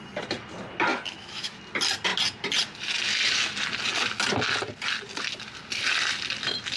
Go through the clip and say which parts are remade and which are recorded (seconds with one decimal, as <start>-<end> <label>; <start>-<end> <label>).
0.0-0.9 recorded; 0.9-1.6 remade; 1.6-6.8 recorded